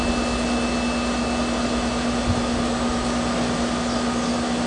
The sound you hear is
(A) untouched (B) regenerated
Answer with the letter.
A